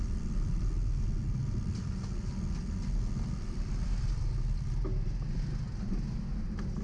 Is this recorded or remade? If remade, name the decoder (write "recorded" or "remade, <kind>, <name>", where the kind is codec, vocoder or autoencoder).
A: recorded